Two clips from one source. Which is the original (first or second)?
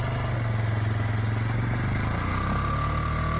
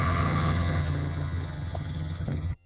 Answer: first